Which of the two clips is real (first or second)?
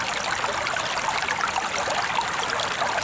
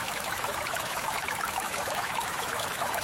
first